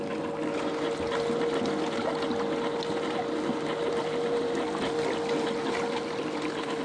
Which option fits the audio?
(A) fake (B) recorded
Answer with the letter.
B